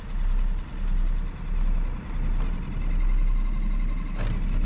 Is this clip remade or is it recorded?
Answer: recorded